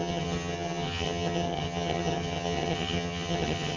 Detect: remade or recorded remade